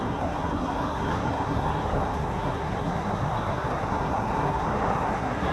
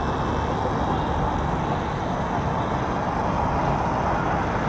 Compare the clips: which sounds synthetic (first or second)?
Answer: first